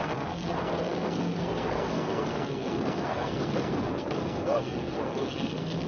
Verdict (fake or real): fake